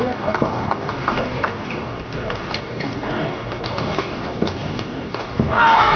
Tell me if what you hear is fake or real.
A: fake